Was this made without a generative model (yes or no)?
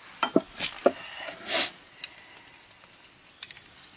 yes